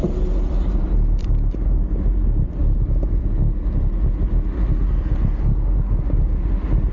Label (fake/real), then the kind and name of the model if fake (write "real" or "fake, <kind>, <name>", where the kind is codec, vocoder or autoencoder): real